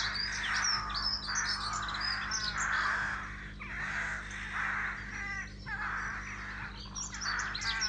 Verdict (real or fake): real